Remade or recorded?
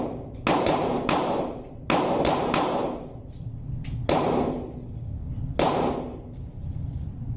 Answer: recorded